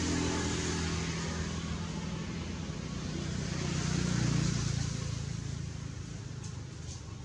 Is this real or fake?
real